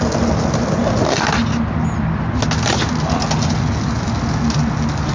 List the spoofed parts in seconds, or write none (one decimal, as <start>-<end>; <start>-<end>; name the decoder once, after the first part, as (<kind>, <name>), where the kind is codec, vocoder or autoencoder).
none